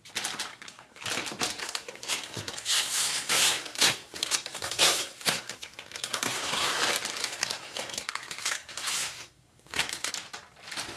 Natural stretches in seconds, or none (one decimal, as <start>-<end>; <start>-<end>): 0.0-0.5; 1.0-1.6; 6.8-7.2; 10.1-11.0